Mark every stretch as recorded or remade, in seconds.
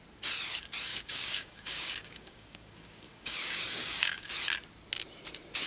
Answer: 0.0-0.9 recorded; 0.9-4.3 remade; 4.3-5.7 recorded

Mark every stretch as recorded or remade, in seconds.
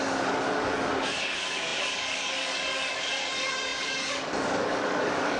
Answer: 0.0-5.4 remade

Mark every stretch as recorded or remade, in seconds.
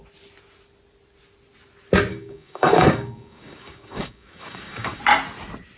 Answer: 0.0-2.1 recorded; 2.1-5.0 remade; 5.0-5.8 recorded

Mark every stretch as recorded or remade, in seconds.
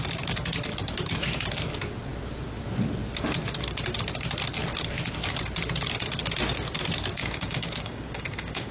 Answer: 0.0-7.2 recorded; 7.2-8.7 remade